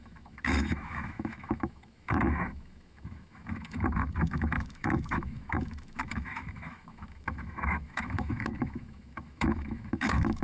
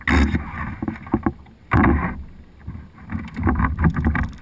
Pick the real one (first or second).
second